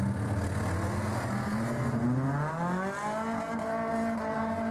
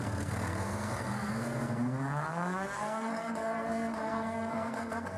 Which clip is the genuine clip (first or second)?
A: first